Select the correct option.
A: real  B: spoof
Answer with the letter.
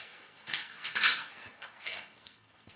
B